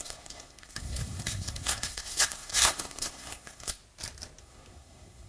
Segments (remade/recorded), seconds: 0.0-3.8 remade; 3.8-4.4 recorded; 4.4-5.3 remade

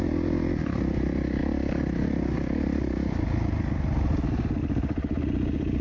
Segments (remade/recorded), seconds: 0.0-5.8 recorded

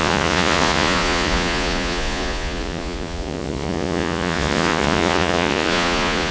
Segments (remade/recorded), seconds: 0.0-6.3 remade

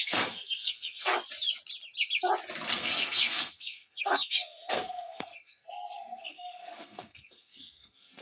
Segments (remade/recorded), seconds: 0.0-1.1 remade; 1.1-2.7 recorded; 2.7-8.2 remade

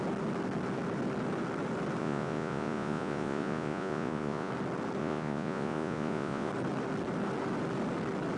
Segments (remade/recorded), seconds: 0.0-2.0 recorded; 2.0-4.5 remade; 4.5-5.0 recorded; 5.0-6.5 remade; 6.5-8.4 recorded

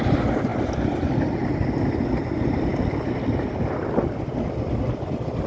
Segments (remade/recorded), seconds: 0.0-5.5 recorded